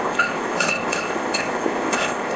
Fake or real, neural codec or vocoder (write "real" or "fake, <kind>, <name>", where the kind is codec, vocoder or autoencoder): fake, codec, ZipCodec